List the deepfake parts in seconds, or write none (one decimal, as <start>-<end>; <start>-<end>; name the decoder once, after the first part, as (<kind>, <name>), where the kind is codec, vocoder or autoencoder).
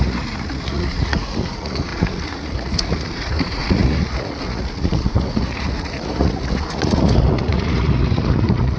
0.0-8.8 (vocoder, Vocos)